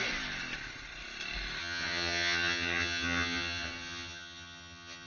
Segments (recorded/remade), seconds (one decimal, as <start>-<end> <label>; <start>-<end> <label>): 0.0-1.6 recorded; 1.6-5.1 remade